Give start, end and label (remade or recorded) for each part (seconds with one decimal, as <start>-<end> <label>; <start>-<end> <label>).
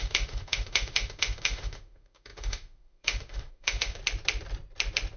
0.0-4.0 remade; 4.0-5.2 recorded